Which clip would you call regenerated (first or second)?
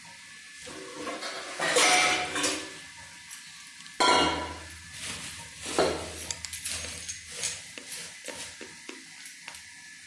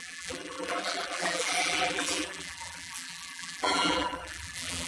second